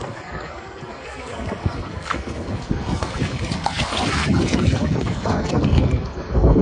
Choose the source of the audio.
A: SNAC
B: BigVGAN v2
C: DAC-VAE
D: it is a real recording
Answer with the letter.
A